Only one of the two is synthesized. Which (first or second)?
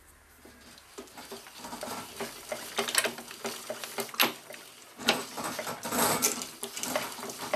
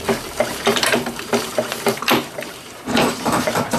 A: second